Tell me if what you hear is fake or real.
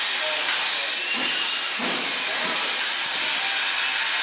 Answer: real